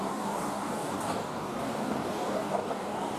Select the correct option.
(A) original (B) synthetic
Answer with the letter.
B